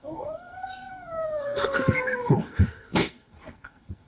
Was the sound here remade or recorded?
remade